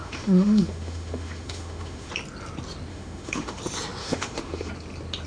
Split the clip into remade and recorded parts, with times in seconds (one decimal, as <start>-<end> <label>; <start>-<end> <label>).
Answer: 0.0-2.1 remade; 2.1-2.9 recorded; 2.9-3.6 remade; 3.6-4.0 recorded; 4.0-4.7 remade; 4.7-5.3 recorded